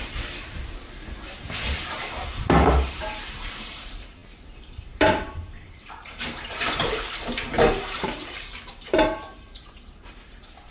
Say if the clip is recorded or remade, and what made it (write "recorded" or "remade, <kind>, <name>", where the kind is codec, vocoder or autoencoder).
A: remade, vocoder, BigVGAN v2